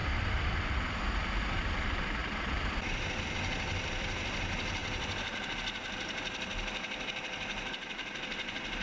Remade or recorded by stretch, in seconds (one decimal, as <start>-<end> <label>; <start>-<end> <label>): 0.0-1.0 remade; 1.0-2.2 recorded; 2.2-3.6 remade; 3.6-8.8 recorded